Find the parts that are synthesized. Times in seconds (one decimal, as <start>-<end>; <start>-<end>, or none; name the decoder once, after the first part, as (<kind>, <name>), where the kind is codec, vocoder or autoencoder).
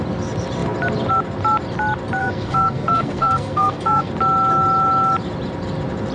2.2-4.1 (codec, SNAC)